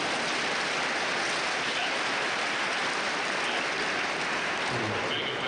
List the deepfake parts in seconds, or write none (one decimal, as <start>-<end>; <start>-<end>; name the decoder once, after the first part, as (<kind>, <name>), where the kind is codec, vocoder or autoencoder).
none